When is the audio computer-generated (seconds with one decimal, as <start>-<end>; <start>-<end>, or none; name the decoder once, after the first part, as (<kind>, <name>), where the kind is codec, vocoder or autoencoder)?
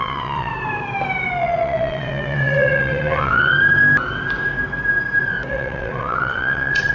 0.0-0.5 (vocoder, WaveNeXt); 1.4-3.5; 5.5-6.9